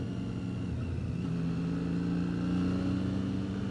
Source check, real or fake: real